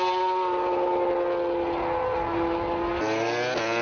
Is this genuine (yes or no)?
yes